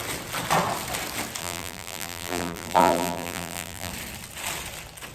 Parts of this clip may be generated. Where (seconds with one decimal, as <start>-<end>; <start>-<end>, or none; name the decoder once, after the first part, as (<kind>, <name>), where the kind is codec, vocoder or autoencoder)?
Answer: 1.4-3.9 (vocoder, BigVGAN v2)